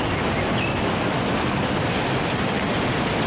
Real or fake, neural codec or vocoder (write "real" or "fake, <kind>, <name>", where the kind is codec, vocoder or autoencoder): real